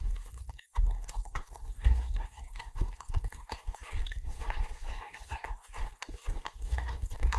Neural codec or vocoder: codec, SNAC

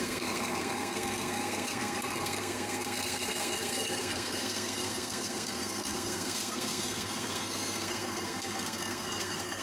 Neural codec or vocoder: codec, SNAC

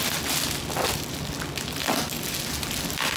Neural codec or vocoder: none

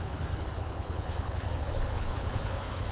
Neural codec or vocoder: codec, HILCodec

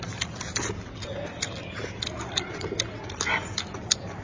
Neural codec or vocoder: none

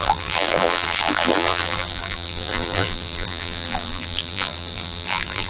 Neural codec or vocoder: vocoder, BigVGAN v2